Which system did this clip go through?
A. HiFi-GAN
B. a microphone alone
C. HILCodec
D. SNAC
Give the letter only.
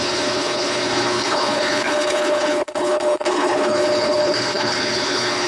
C